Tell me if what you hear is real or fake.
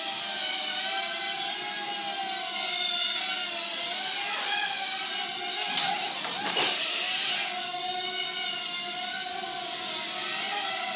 real